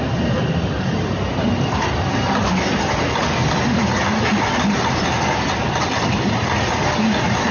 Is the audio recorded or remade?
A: recorded